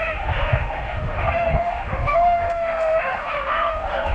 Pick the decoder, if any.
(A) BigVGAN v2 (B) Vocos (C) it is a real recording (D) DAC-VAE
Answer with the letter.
D